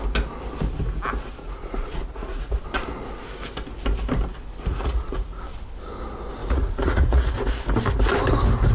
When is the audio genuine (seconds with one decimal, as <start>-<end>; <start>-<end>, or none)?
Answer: 0.0-1.4; 2.5-4.7; 5.4-6.4; 7.3-8.7